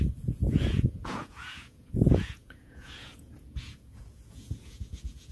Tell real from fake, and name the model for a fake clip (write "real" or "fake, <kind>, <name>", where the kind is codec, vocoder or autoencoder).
fake, vocoder, Vocos